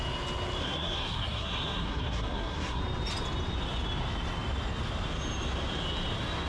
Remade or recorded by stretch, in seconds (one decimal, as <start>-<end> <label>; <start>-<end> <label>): 0.0-0.6 recorded; 0.6-2.8 remade; 2.8-6.5 recorded